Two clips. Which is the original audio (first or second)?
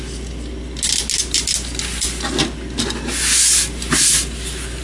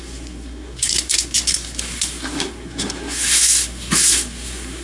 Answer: first